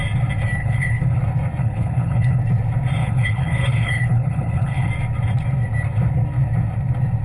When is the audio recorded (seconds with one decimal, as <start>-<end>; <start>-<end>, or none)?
0.0-0.6; 1.2-1.6; 2.4-3.0; 4.9-7.2